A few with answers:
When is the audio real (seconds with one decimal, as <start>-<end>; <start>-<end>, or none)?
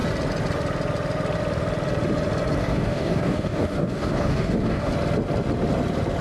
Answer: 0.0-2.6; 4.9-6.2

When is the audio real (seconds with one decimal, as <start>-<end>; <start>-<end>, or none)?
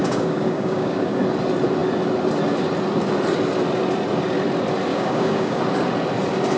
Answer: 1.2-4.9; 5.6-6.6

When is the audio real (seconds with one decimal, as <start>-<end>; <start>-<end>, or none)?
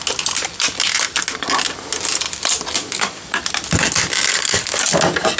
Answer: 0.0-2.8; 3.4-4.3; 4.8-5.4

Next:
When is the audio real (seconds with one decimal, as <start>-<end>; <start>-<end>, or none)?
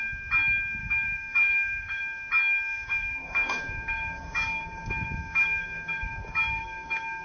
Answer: 0.0-0.8; 2.0-2.7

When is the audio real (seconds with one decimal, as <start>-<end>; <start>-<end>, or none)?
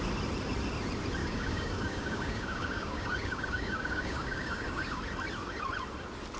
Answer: 0.0-1.2; 5.0-6.4